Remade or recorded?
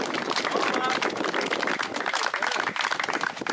recorded